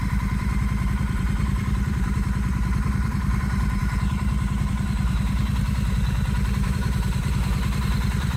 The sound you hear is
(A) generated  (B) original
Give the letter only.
A